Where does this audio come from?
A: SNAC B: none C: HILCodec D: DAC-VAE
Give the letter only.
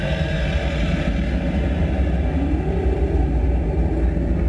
B